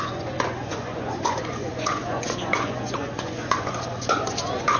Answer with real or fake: fake